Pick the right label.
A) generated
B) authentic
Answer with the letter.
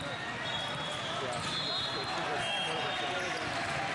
B